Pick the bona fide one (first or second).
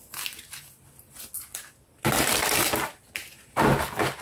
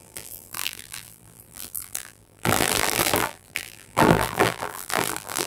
first